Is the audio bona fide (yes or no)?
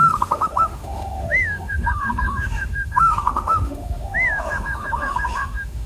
no